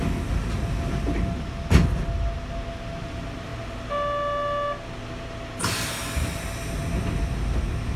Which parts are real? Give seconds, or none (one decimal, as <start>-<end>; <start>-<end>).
0.0-8.0